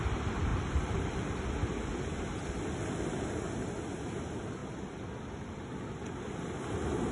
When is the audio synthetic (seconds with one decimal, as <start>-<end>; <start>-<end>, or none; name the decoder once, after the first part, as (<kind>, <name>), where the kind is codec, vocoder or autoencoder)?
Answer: none